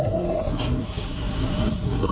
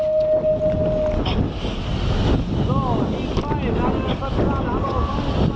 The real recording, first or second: second